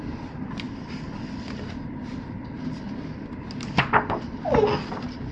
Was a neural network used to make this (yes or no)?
no